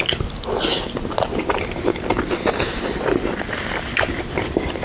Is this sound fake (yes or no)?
no